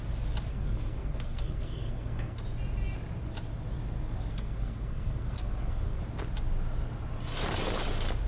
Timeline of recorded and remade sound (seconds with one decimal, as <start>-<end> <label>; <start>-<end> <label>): 0.0-0.5 recorded; 0.5-2.4 remade; 2.4-4.3 recorded; 4.3-6.0 remade; 6.0-8.3 recorded